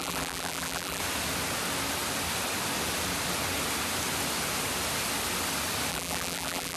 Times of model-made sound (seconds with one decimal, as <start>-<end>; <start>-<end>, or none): 0.0-1.0; 5.9-6.8